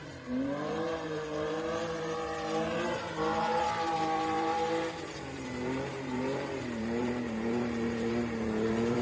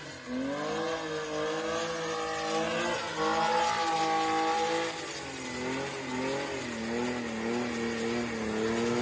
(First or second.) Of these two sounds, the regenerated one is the first